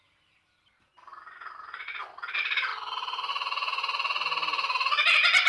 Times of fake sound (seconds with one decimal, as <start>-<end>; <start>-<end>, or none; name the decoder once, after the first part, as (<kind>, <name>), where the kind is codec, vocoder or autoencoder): 1.1-2.1 (vocoder, Vocos); 2.7-3.3